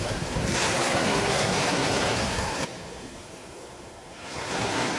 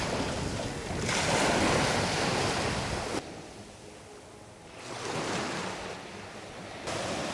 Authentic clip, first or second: second